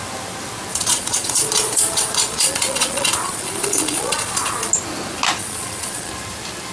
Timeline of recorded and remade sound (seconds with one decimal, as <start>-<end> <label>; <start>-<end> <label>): 0.0-0.7 recorded; 0.7-4.7 remade; 4.7-5.4 recorded; 5.4-6.1 remade; 6.1-6.7 recorded